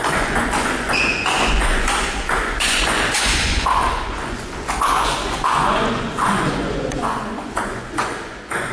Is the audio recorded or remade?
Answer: remade